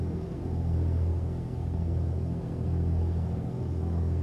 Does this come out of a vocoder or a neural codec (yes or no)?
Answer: yes